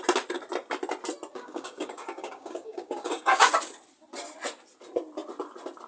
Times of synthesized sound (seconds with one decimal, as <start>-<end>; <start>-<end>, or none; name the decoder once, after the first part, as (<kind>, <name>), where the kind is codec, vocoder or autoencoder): 1.3-3.5 (codec, DAC)